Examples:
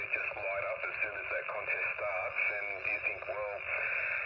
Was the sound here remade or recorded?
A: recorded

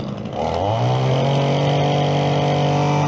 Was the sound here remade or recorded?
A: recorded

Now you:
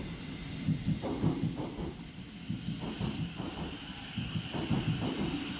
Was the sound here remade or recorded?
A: recorded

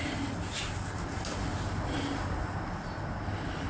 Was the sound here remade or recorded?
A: recorded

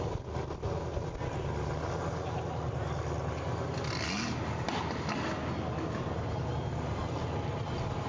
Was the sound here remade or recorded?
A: recorded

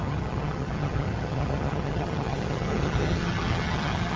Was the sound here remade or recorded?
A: remade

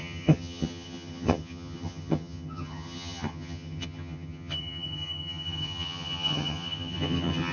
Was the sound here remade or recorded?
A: remade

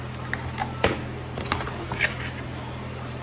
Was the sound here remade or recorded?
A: recorded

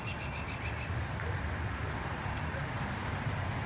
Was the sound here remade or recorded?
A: recorded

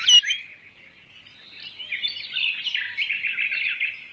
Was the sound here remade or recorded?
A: recorded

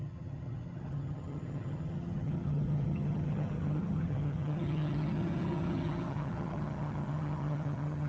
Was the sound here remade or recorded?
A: remade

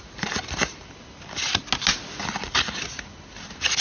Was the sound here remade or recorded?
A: recorded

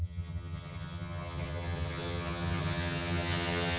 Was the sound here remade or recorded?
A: remade